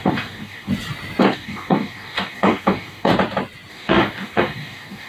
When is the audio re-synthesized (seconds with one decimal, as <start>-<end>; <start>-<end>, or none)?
0.0-0.7; 1.2-3.1; 3.7-5.1